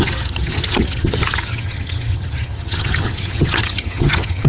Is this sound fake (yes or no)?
yes